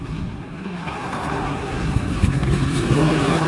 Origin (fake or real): fake